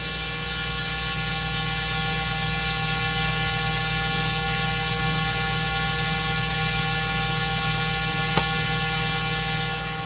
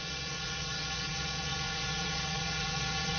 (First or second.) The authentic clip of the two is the first